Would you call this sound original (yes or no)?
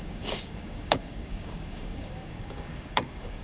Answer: no